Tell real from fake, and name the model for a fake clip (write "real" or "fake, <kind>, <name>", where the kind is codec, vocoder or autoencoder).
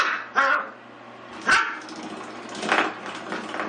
real